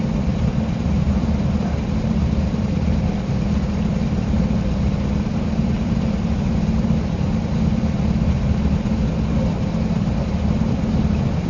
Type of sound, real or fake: fake